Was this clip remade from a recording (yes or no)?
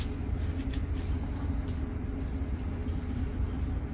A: no